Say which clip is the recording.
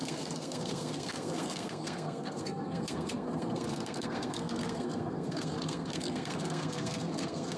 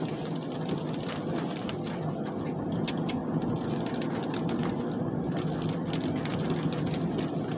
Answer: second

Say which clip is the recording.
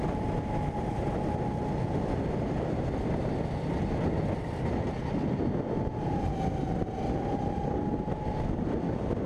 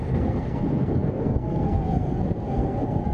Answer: first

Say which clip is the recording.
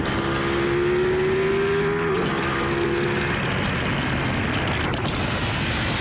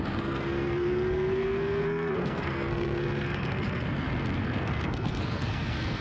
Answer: first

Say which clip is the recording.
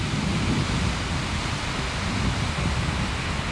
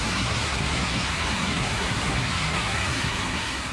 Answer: first